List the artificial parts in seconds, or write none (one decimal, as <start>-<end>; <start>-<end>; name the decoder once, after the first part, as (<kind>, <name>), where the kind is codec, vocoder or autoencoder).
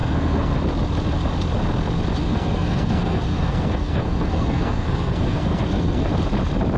0.0-0.5 (codec, SNAC); 2.2-6.1